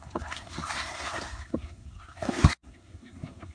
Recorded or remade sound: remade